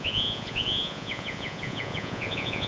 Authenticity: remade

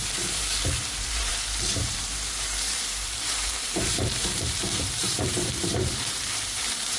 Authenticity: remade